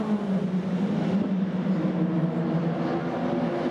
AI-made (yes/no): no